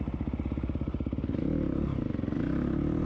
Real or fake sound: real